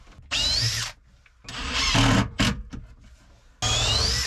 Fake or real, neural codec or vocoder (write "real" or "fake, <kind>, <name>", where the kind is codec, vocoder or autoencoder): real